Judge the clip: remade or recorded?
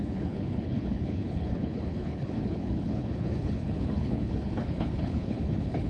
remade